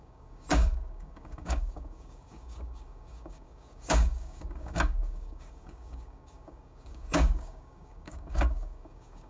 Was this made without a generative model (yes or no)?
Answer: no